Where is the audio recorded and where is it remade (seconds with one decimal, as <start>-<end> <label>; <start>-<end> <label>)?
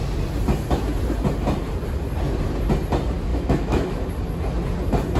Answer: 0.0-3.3 recorded; 3.3-4.1 remade; 4.1-5.2 recorded